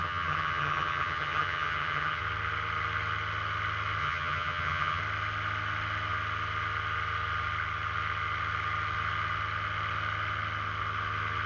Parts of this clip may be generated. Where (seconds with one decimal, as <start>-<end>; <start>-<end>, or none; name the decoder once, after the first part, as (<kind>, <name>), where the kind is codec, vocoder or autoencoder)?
0.0-2.2 (vocoder, HiFi-GAN); 4.0-5.0